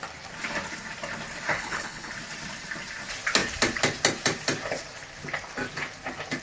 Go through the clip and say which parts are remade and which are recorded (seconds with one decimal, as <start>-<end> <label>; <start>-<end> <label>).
0.0-1.5 recorded; 1.5-2.1 remade; 2.1-6.4 recorded